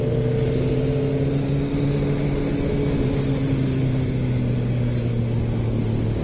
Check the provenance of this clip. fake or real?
real